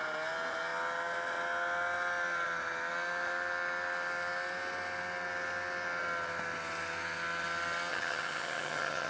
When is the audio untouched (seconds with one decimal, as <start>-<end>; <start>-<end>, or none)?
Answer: 0.0-7.9